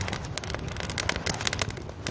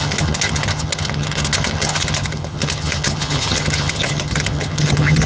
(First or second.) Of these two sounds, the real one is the first